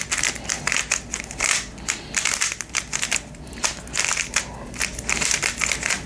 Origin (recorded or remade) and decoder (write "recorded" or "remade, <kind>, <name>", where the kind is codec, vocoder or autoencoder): remade, vocoder, BigVGAN v2